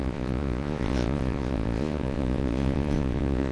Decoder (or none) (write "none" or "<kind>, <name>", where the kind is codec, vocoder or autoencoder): vocoder, Vocos